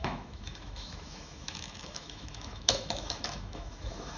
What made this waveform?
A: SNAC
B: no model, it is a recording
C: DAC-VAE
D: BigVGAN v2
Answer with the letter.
C